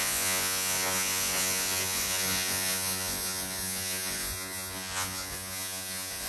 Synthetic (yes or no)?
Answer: yes